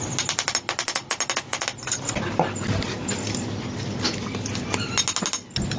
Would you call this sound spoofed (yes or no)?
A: no